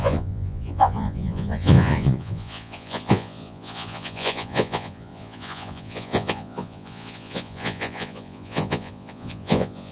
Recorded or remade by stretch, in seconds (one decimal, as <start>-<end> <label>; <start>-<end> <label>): 0.0-9.9 remade